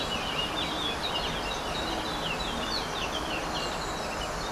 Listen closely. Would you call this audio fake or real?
real